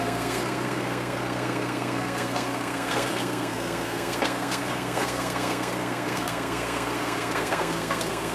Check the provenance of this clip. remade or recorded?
remade